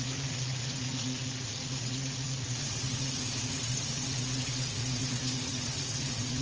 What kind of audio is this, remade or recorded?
remade